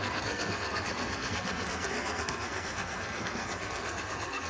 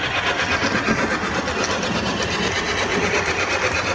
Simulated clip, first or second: first